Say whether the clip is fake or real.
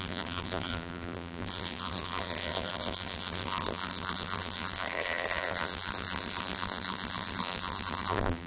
fake